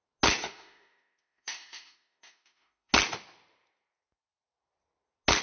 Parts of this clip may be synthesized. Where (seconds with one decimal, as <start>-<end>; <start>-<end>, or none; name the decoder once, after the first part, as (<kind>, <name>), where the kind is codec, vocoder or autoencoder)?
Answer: 0.4-2.9 (autoencoder, DAC-VAE)